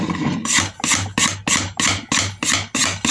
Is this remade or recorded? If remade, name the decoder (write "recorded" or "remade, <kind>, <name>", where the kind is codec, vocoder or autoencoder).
recorded